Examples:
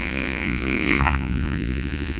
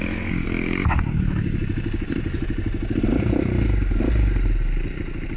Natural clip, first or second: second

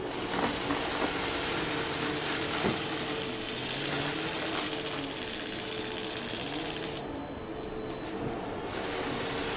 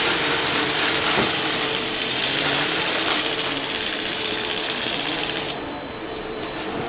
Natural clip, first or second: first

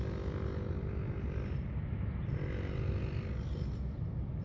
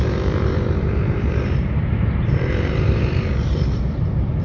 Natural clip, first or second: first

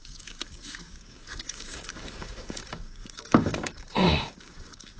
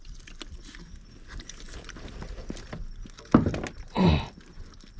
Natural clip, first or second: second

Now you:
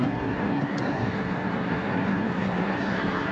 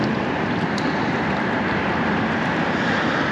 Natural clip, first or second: second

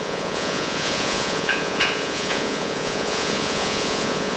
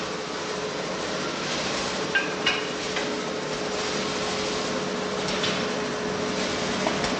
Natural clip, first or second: second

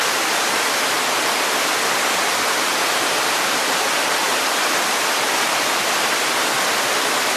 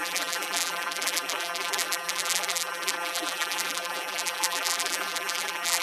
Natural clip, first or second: first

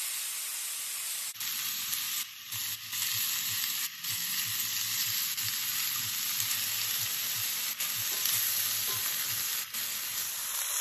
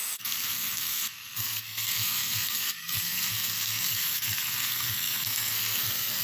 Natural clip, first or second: first